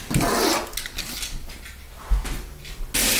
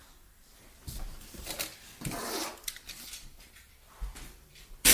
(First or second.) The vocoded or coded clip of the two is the second